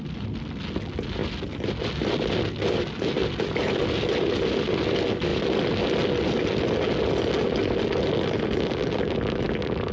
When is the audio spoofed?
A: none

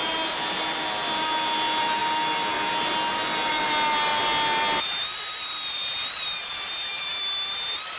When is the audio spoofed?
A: none

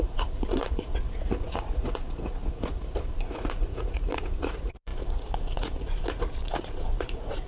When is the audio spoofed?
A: 0.0-7.5 (vocoder, Vocos)

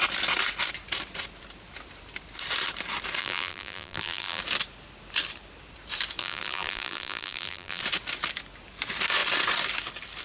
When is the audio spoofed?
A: 3.2-4.4 (vocoder, BigVGAN v2); 6.2-7.8